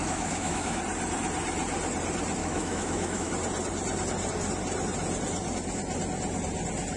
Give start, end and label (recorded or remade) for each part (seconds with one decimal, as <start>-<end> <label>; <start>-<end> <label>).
0.0-0.8 remade; 0.8-2.4 recorded; 2.4-3.3 remade; 3.3-7.0 recorded